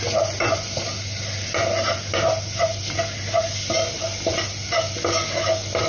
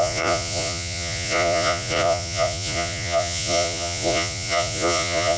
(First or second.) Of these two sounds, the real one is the first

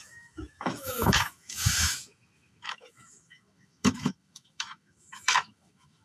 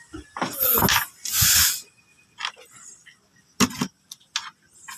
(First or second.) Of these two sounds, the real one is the second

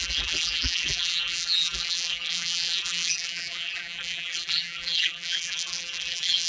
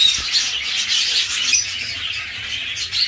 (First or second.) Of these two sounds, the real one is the second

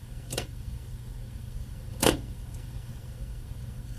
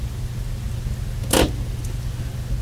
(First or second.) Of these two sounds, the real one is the second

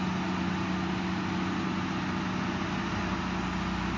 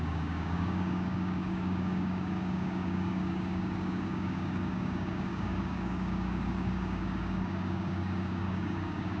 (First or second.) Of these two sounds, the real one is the first